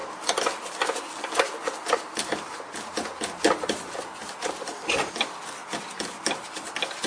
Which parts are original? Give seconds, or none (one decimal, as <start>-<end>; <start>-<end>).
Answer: 0.0-7.1